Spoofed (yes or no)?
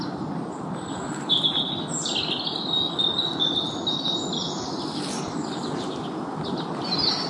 no